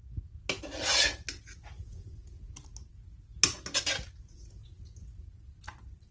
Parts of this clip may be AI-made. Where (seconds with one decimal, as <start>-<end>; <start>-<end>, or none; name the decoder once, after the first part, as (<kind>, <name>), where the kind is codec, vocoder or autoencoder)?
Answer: none